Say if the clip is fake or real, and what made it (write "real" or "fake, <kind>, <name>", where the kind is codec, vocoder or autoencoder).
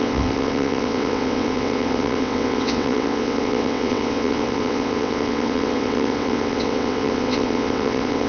fake, vocoder, WaveNeXt